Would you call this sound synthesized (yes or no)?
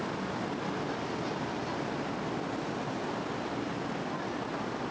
no